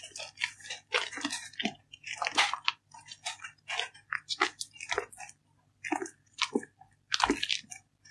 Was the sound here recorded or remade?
recorded